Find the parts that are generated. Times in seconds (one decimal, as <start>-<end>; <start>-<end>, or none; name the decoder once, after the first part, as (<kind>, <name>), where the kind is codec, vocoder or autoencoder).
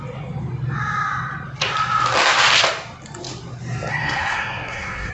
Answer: 3.9-5.1 (codec, SNAC)